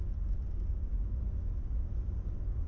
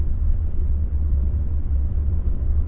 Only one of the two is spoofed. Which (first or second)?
second